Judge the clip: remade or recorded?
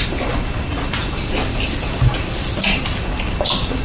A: recorded